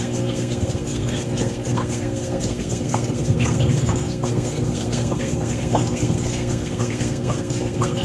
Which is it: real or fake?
fake